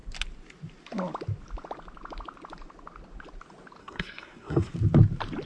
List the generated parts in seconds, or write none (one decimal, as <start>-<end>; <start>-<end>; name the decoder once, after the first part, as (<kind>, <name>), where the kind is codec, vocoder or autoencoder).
3.8-4.7 (codec, SNAC)